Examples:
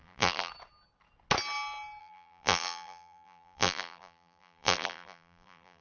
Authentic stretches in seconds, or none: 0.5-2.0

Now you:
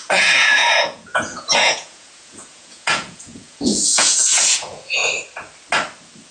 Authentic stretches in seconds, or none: 5.0-6.3

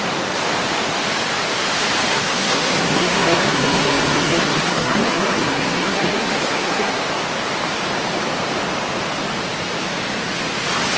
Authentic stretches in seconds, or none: 0.0-2.1; 7.0-11.0

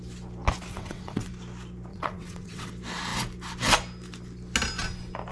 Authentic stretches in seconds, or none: 0.0-0.7; 1.3-1.9; 2.7-5.3

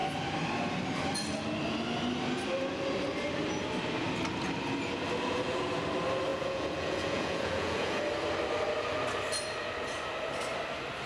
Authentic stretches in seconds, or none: 0.0-6.3; 8.0-11.1